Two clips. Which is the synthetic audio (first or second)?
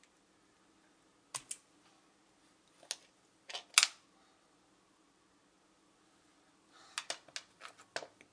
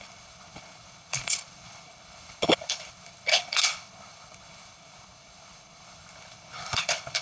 second